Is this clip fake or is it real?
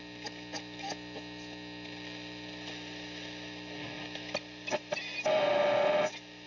real